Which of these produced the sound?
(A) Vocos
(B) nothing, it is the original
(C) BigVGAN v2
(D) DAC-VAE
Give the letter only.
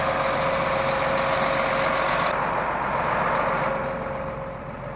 B